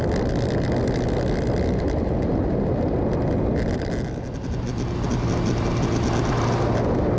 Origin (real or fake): real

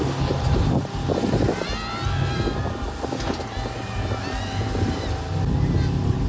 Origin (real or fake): real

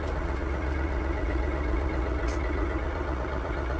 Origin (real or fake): fake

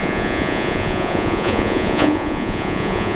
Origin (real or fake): fake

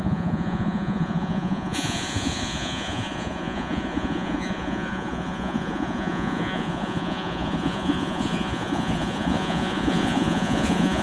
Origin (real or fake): fake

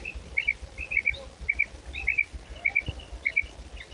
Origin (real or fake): real